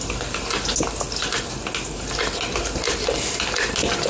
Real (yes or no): yes